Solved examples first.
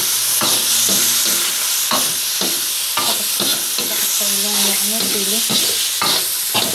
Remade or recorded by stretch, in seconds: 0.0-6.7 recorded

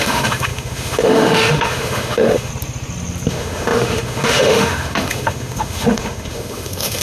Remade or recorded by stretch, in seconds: 0.0-2.5 remade; 2.5-3.3 recorded; 3.3-7.0 remade

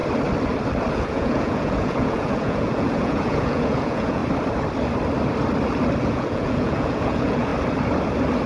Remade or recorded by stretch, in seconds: 0.0-0.9 recorded; 0.9-4.2 remade; 4.2-6.0 recorded; 6.0-7.5 remade; 7.5-8.5 recorded

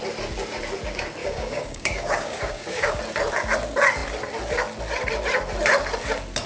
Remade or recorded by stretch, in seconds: 0.0-1.2 recorded; 1.2-3.0 remade; 3.0-6.5 recorded

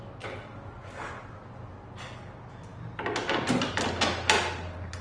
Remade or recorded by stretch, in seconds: 0.0-5.0 recorded